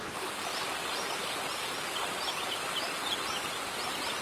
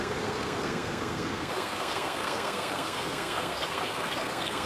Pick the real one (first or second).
first